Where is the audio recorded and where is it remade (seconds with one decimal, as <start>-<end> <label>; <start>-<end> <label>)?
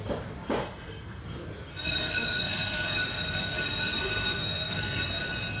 0.0-0.6 recorded; 0.6-1.2 remade; 1.2-1.7 recorded; 1.7-5.1 remade; 5.1-5.6 recorded